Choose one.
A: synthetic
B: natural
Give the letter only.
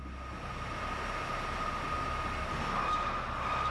B